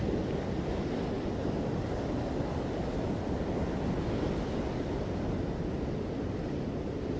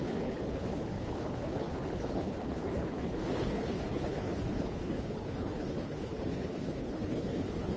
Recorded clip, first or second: first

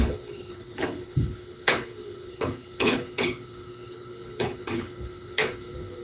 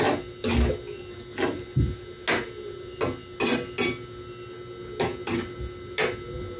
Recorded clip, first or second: second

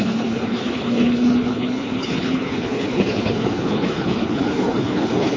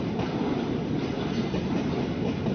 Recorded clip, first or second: second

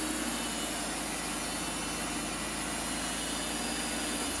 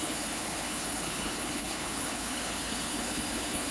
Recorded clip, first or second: first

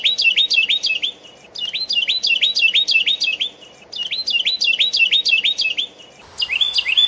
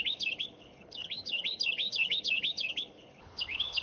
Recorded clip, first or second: first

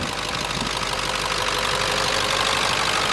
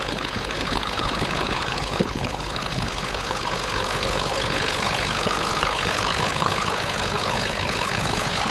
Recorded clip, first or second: first